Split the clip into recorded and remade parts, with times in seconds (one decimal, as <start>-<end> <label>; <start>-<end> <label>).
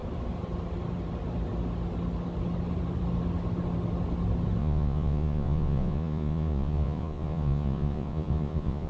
0.0-4.6 recorded; 4.6-8.9 remade